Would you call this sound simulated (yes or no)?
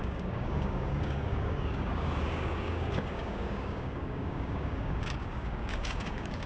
yes